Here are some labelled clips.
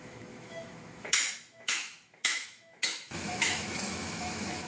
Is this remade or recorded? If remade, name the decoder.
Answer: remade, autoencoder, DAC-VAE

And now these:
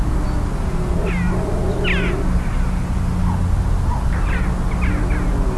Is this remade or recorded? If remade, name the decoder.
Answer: recorded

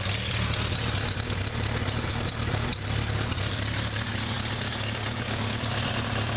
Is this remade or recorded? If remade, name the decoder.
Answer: recorded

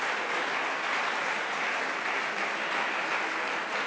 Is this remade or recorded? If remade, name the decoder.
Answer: recorded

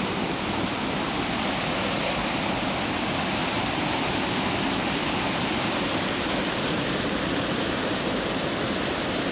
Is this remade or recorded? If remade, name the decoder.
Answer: recorded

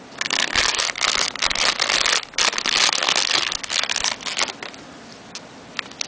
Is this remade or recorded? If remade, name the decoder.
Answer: recorded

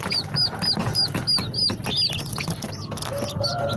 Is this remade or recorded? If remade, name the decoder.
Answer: recorded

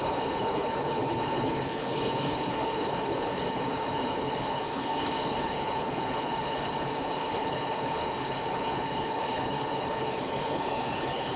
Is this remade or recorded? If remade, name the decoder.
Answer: remade, codec, HILCodec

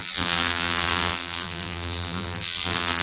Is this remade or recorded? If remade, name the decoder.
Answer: remade, vocoder, BigVGAN v2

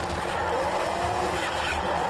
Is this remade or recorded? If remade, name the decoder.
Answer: recorded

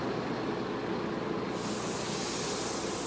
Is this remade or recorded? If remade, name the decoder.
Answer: recorded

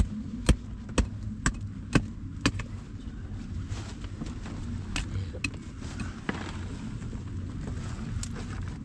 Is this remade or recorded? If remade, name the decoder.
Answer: recorded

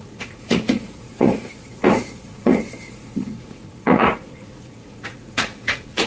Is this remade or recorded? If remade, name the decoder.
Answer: remade, vocoder, Vocos